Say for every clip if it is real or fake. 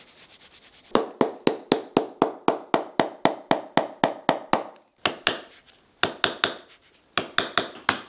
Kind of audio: real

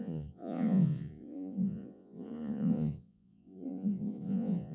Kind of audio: fake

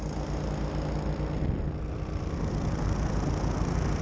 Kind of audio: real